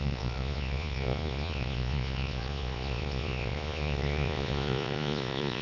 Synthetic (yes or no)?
yes